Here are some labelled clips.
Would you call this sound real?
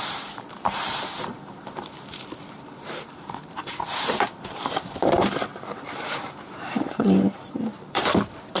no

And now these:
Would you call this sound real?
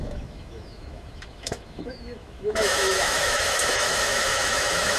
no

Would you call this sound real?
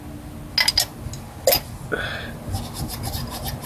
yes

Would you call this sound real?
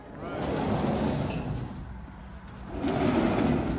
yes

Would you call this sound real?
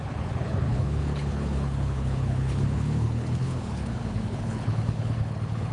no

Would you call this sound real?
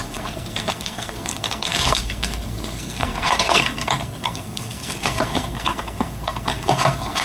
no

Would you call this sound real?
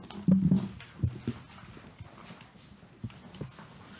yes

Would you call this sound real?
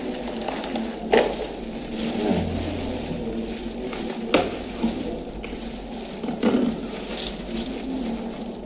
yes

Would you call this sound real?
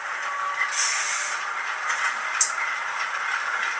yes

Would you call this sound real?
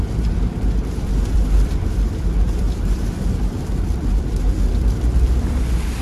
no